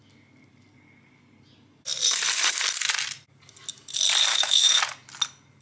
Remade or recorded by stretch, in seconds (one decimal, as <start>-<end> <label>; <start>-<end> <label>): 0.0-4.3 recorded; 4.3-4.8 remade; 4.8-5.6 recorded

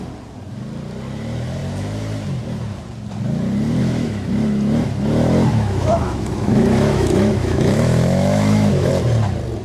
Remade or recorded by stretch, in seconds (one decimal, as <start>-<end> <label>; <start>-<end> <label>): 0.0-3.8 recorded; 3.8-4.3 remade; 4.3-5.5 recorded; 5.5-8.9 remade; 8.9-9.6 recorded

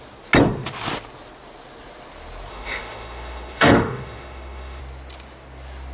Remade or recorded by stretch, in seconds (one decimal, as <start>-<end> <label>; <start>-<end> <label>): 0.0-2.5 recorded; 2.5-4.8 remade; 4.8-5.9 recorded

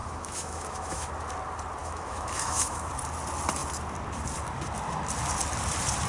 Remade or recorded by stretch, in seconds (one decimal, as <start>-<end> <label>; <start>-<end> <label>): 0.0-1.1 remade; 1.1-1.8 recorded; 1.8-2.9 remade; 2.9-6.1 recorded

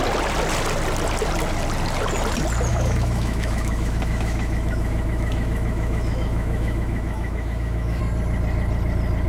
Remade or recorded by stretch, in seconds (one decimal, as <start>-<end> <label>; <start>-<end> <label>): 0.0-2.7 recorded; 2.7-8.0 remade; 8.0-9.3 recorded

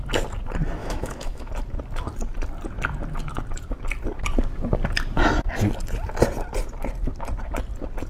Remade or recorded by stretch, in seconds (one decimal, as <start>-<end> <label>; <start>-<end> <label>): 0.0-0.8 recorded; 0.8-1.5 remade; 1.5-8.1 recorded

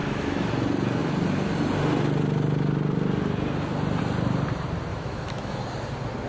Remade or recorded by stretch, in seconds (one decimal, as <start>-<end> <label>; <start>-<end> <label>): 0.0-0.5 remade; 0.5-4.9 recorded; 4.9-5.6 remade; 5.6-6.3 recorded

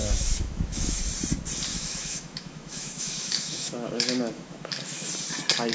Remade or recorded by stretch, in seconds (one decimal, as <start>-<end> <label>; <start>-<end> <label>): 0.0-1.0 remade; 1.0-1.7 recorded; 1.7-5.1 remade; 5.1-5.7 recorded